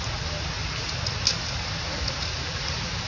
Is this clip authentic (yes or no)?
yes